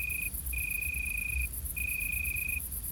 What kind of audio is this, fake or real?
fake